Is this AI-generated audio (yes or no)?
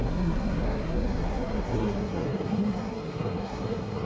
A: yes